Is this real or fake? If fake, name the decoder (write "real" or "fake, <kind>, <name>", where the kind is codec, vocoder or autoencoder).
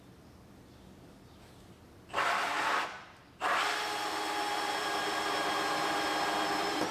real